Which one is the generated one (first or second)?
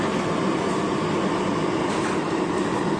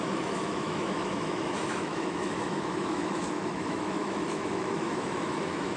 second